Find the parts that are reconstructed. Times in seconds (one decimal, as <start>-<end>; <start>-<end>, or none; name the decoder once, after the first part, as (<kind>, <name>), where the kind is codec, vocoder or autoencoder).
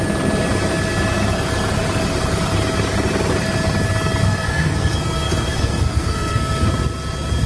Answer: 4.2-6.7 (codec, SNAC)